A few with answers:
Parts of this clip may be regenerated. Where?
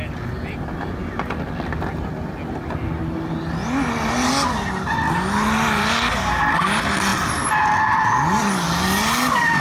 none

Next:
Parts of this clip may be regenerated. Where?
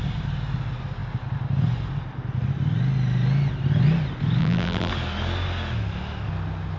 4.4-4.9 (vocoder, BigVGAN v2)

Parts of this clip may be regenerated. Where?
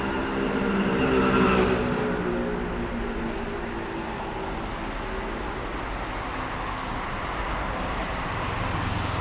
none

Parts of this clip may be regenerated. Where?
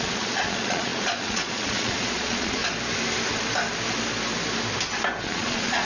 0.0-2.6 (vocoder, Vocos); 5.2-5.8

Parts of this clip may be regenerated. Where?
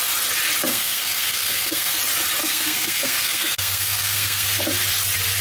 0.7-2.0 (codec, SNAC); 2.4-4.6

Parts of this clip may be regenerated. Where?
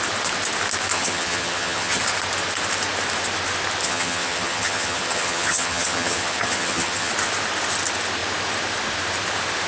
0.9-2.0 (vocoder, HiFi-GAN); 3.8-7.1